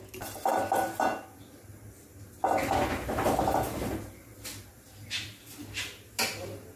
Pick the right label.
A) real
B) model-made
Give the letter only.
A